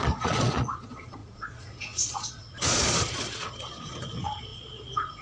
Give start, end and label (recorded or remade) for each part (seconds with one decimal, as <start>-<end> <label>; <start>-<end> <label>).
0.0-5.2 remade